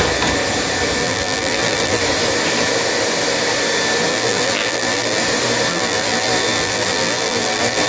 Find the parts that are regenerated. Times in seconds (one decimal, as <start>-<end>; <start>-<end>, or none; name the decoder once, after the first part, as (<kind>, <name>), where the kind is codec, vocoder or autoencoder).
1.0-2.0 (vocoder, BigVGAN v2); 4.1-5.2; 5.7-7.9